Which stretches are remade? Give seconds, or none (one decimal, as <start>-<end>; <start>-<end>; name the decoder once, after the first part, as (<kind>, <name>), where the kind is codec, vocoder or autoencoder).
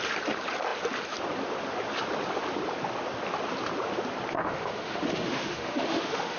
4.4-6.4 (autoencoder, DAC-VAE)